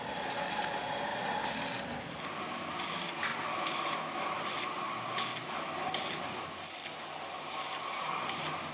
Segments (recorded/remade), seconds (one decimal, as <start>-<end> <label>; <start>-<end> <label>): 0.0-8.7 recorded